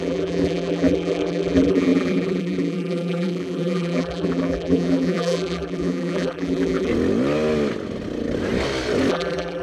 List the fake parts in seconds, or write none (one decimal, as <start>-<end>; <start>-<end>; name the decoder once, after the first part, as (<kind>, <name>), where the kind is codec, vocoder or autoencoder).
0.0-6.9 (vocoder, BigVGAN v2); 9.1-9.6